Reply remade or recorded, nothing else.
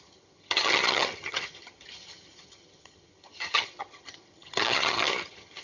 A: remade